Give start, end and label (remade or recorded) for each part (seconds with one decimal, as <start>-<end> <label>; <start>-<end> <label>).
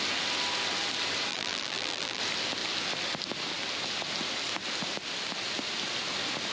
0.0-1.3 recorded; 1.3-2.2 remade; 2.2-6.5 recorded